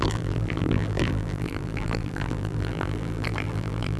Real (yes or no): no